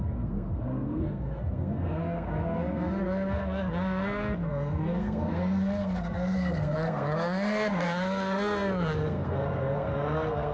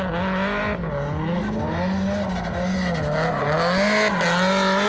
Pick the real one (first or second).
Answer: second